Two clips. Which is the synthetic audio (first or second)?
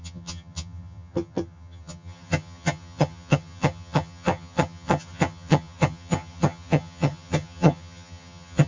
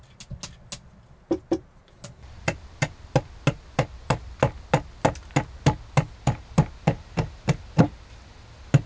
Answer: first